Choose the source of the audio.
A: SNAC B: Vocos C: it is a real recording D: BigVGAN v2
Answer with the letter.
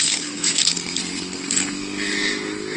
A